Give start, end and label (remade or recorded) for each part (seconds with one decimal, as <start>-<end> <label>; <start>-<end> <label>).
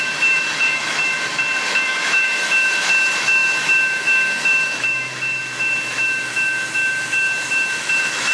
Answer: 0.0-1.1 remade; 1.1-1.7 recorded; 1.7-8.3 remade